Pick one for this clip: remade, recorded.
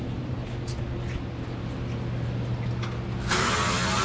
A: recorded